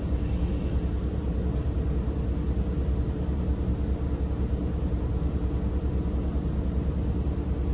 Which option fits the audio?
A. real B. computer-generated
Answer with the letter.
A